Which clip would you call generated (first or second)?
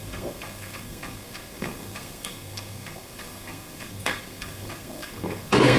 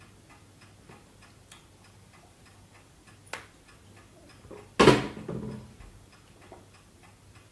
first